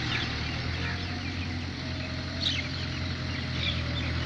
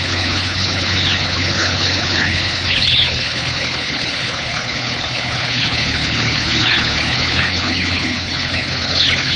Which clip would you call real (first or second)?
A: first